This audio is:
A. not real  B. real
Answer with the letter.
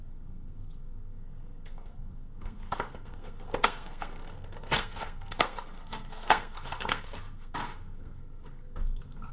A